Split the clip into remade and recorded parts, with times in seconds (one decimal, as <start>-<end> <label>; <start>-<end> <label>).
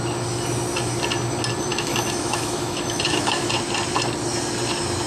0.0-1.7 recorded; 1.7-3.5 remade; 3.5-5.1 recorded